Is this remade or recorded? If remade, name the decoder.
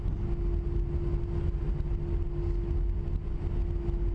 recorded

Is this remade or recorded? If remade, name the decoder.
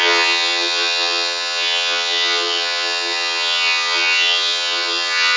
remade, vocoder, HiFi-GAN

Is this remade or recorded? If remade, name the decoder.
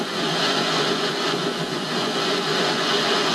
remade, vocoder, Vocos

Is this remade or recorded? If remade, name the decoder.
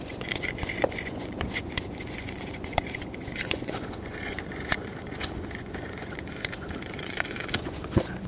remade, vocoder, Vocos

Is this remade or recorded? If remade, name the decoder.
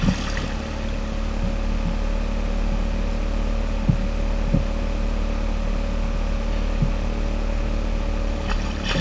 recorded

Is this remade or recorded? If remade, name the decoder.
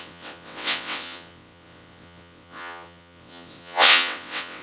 remade, vocoder, WaveNeXt